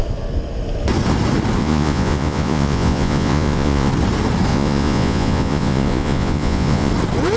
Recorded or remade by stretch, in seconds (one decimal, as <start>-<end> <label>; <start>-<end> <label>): 0.0-1.6 recorded; 1.6-3.9 remade; 3.9-4.5 recorded; 4.5-6.9 remade; 6.9-7.4 recorded